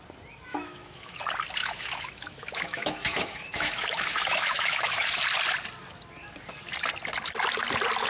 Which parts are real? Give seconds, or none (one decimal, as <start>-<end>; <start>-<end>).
0.0-0.5; 1.2-1.6; 5.2-8.1